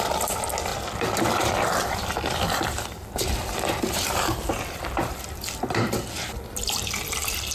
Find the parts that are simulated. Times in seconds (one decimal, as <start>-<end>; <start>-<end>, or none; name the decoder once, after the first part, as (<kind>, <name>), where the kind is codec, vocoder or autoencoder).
0.0-7.5 (vocoder, BigVGAN v2)